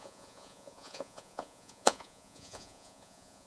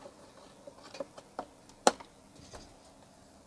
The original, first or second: second